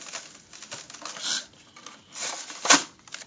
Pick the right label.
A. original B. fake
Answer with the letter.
A